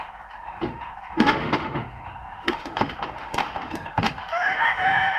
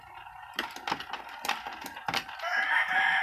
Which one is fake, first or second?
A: first